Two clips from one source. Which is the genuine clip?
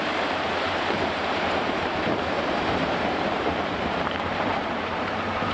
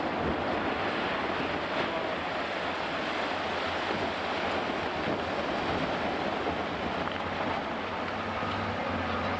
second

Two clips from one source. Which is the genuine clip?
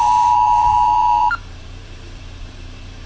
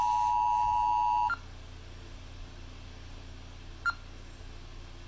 second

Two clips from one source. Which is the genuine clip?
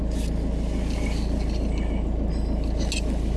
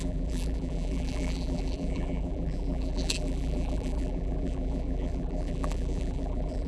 first